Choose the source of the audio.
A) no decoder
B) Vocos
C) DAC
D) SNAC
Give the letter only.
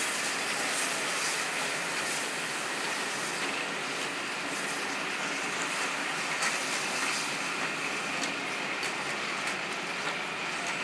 A